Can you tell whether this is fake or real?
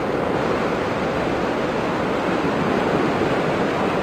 real